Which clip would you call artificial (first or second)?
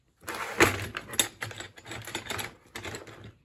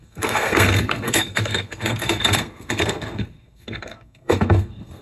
second